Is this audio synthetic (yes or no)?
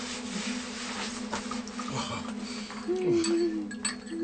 no